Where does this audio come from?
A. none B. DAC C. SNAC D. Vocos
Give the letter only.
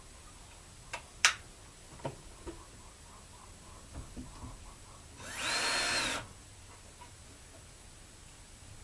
A